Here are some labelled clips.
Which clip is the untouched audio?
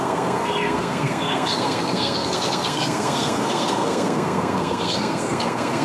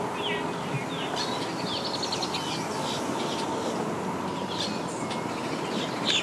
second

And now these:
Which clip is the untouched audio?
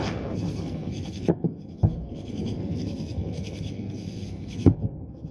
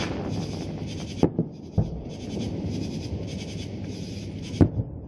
second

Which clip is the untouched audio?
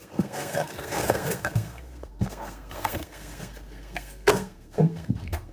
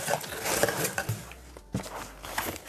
second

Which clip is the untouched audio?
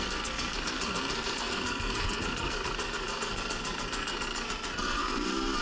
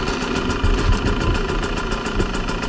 second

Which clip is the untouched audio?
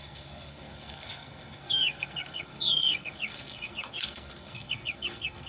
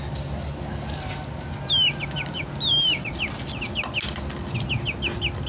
second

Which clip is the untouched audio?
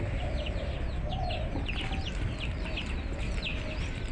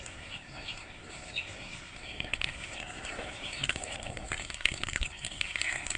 first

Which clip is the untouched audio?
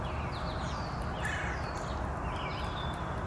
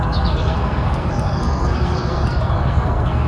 first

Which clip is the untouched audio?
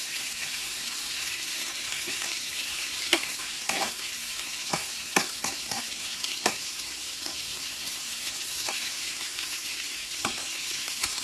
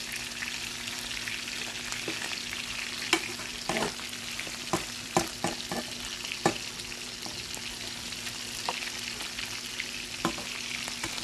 second